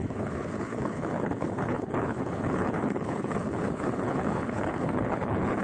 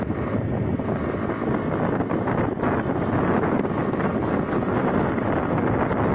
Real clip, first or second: second